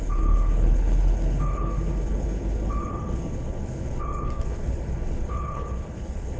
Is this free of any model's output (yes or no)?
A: no